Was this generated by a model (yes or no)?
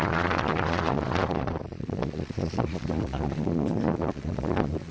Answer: yes